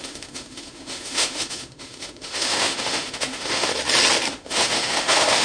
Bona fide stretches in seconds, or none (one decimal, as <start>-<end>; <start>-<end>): 3.7-4.3